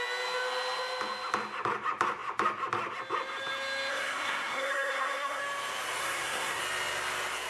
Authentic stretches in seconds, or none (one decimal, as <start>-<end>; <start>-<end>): 0.0-3.9; 5.4-6.0; 6.6-7.5